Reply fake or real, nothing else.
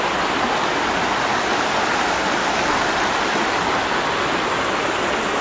real